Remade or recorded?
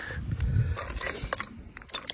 recorded